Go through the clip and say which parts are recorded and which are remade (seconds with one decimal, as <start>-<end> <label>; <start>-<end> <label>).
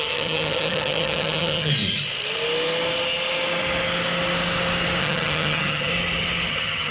0.0-1.7 remade; 1.7-5.0 recorded; 5.0-5.9 remade; 5.9-6.5 recorded; 6.5-6.9 remade